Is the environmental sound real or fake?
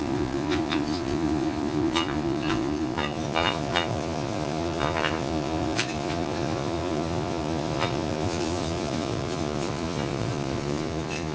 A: fake